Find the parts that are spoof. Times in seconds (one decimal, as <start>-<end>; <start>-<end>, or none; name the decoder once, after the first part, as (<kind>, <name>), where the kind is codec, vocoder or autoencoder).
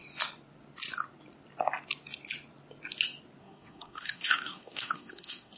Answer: 3.4-5.6 (codec, SNAC)